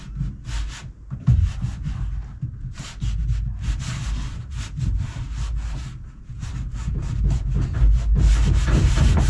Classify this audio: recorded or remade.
recorded